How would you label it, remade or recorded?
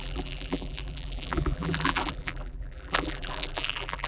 remade